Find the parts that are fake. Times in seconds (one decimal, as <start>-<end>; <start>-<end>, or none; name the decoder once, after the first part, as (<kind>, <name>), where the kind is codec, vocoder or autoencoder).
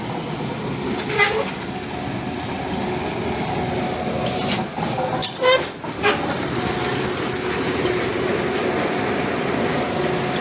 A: none